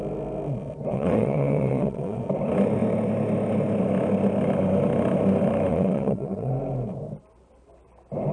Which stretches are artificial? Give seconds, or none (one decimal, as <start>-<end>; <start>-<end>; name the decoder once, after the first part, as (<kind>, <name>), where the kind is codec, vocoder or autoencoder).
0.9-2.2 (vocoder, WaveNeXt); 5.7-6.5